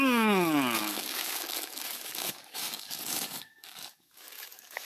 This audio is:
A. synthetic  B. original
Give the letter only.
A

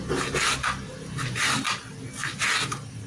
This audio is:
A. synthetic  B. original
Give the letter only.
B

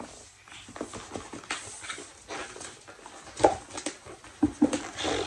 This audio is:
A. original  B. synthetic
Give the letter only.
A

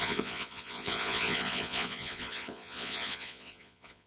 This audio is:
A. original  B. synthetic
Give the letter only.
B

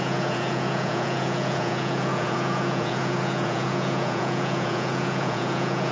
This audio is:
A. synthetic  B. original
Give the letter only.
A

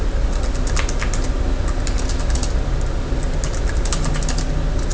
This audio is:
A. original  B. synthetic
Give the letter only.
A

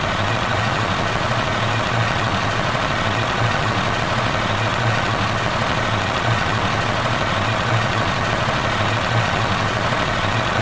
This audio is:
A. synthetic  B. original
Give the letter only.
A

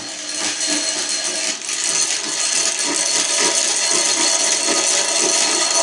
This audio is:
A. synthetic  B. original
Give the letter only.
B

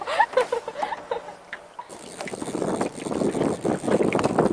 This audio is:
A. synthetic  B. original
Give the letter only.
B